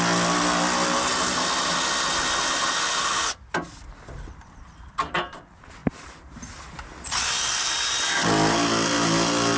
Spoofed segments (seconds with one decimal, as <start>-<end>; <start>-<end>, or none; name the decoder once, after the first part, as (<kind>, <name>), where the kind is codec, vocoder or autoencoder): none